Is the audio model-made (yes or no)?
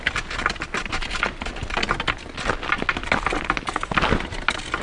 no